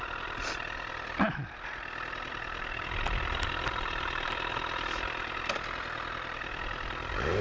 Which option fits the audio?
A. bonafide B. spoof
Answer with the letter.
A